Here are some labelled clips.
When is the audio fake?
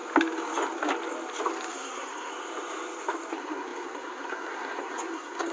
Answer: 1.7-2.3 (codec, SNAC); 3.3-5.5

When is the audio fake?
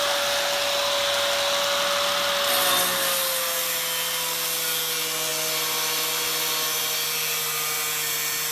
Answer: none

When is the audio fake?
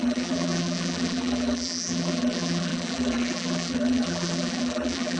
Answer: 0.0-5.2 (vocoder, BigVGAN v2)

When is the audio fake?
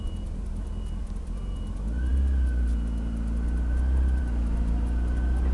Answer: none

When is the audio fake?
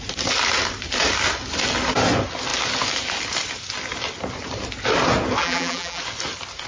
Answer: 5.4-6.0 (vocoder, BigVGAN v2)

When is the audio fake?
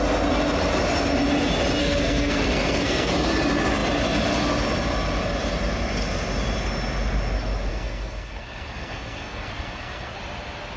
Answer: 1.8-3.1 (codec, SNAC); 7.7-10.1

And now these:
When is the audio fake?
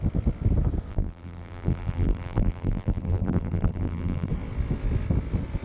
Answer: 0.9-4.3 (vocoder, BigVGAN v2)